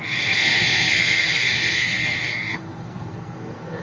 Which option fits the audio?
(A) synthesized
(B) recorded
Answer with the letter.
A